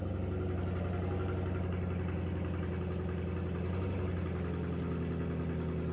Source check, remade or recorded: recorded